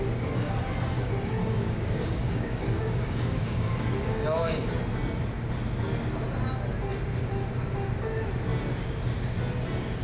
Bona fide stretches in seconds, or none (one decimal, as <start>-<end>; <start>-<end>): 0.0-1.4; 4.8-10.0

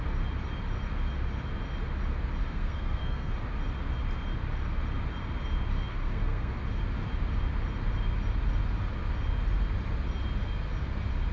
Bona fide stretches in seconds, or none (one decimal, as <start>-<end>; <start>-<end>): 0.0-2.4; 3.3-5.9; 6.6-11.3

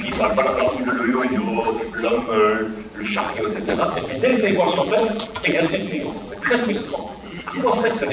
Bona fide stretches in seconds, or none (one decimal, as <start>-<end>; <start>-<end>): 2.3-3.0

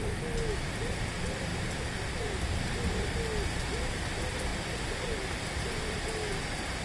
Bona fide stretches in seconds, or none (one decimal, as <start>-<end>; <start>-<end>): 0.0-6.8

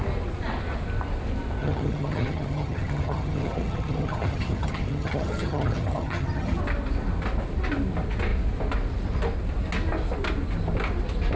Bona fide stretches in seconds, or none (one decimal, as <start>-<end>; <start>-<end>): 0.0-1.6; 6.6-11.4